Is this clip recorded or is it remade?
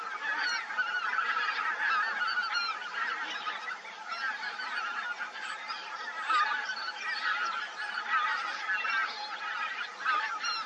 recorded